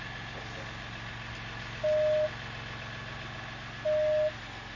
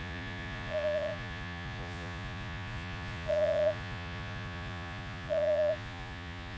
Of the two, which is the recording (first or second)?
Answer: first